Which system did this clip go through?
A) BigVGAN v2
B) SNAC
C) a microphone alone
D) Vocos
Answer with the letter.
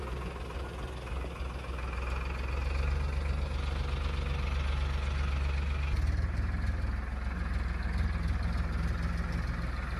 C